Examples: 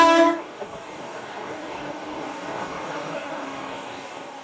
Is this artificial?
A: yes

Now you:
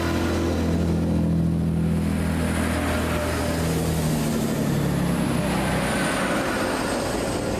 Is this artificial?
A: no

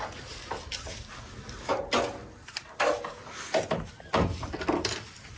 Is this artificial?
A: no